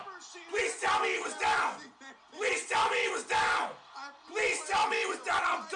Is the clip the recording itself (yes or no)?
yes